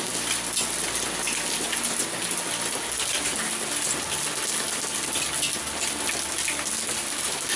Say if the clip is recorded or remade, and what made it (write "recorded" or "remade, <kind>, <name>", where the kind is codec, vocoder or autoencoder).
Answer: recorded